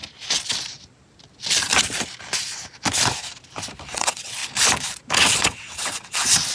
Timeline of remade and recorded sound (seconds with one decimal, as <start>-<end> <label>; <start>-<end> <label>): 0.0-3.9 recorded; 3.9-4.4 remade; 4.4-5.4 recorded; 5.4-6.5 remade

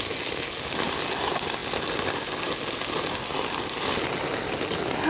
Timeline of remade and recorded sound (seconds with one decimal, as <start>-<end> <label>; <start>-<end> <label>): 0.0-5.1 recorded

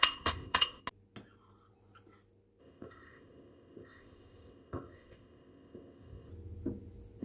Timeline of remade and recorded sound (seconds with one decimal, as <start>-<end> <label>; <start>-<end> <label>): 0.0-0.8 remade; 0.8-2.6 recorded; 2.6-6.3 remade; 6.3-7.2 recorded

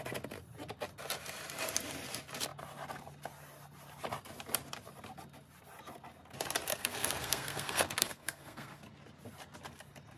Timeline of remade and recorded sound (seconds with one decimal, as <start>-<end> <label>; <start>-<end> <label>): 0.0-6.7 recorded; 6.7-8.8 remade; 8.8-10.2 recorded

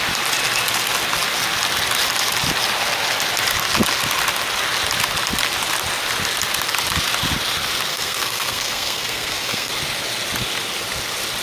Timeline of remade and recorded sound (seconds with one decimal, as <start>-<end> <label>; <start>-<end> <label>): 0.0-7.9 recorded; 7.9-9.7 remade; 9.7-11.4 recorded

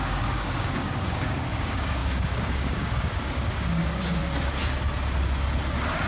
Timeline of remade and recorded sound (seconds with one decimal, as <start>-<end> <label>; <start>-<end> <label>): 0.0-4.2 remade; 4.2-6.1 recorded